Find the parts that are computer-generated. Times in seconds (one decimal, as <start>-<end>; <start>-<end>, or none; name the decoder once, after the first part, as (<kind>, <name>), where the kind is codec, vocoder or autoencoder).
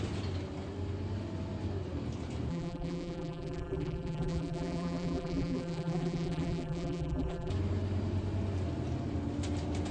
2.5-7.5 (vocoder, BigVGAN v2)